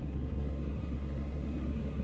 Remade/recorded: remade